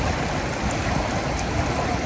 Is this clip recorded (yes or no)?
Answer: yes